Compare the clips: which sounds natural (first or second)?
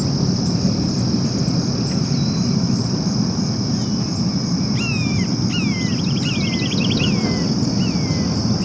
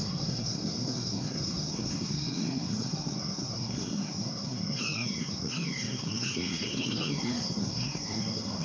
first